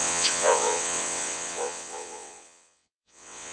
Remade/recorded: remade